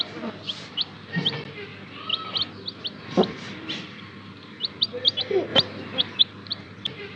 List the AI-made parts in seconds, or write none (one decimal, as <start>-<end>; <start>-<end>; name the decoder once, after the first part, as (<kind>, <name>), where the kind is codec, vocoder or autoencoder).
0.0-1.7 (vocoder, BigVGAN v2); 2.8-5.5; 6.2-7.2